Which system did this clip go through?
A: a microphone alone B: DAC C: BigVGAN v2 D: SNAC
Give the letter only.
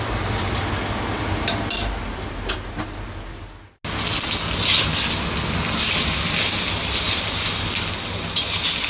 A